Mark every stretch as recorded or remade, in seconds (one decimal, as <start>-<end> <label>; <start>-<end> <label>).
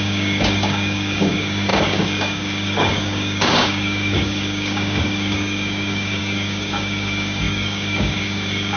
0.0-8.8 remade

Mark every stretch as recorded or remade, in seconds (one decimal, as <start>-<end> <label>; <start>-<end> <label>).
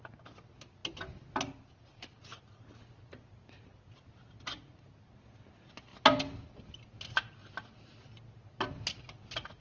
0.0-9.6 recorded